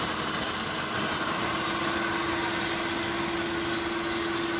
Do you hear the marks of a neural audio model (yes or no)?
no